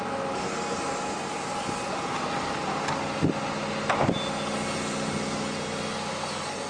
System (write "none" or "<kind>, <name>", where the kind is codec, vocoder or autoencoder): none